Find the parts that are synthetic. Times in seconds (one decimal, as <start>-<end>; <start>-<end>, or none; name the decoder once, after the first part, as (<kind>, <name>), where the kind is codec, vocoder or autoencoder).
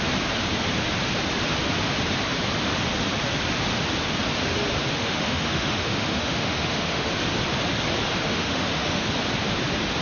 4.9-7.1 (autoencoder, DAC-VAE); 8.3-9.1